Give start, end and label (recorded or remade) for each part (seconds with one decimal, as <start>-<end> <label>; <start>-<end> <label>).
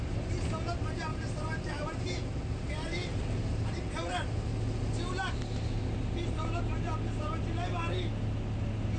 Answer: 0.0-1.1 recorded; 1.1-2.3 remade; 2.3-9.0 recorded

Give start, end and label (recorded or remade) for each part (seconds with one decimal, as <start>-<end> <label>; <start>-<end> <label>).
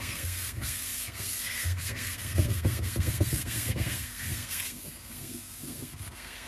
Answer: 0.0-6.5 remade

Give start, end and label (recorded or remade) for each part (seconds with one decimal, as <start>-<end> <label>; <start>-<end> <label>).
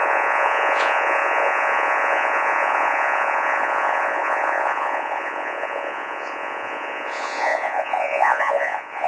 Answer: 0.0-9.1 remade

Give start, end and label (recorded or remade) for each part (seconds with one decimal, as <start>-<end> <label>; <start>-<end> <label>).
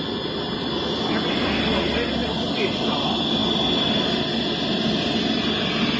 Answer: 0.0-2.2 recorded; 2.2-3.0 remade; 3.0-3.4 recorded; 3.4-4.2 remade; 4.2-6.0 recorded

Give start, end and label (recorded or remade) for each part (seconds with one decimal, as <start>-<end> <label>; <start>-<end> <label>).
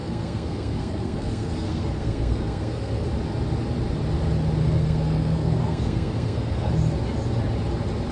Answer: 0.0-3.1 remade; 3.1-4.6 recorded; 4.6-6.7 remade; 6.7-8.1 recorded